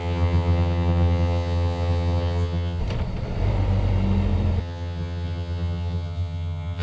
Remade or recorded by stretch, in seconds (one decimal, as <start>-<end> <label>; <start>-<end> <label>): 0.0-2.8 remade; 2.8-4.6 recorded; 4.6-6.8 remade